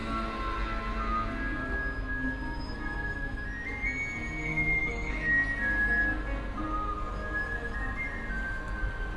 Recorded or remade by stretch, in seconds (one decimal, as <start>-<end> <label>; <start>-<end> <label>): 0.0-4.5 recorded; 4.5-5.3 remade; 5.3-9.2 recorded